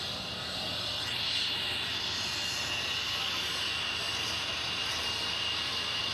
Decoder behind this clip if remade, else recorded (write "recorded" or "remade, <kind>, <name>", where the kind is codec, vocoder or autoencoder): recorded